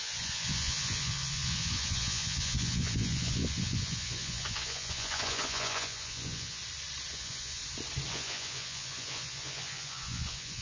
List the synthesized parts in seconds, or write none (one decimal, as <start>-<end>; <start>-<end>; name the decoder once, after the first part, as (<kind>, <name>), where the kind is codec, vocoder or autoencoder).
0.0-6.6 (vocoder, Vocos); 7.1-7.6; 8.1-10.6